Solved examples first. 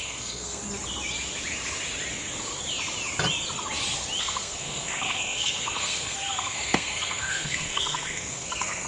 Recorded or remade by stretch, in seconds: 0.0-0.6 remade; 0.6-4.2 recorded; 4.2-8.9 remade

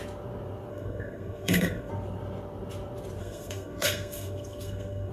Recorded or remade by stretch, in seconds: 0.0-0.7 recorded; 0.7-1.9 remade; 1.9-3.2 recorded; 3.2-5.1 remade

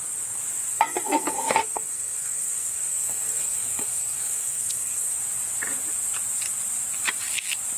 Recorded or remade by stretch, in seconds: 0.0-0.7 recorded; 0.7-5.2 remade; 5.2-7.8 recorded